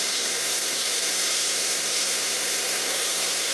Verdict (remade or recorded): remade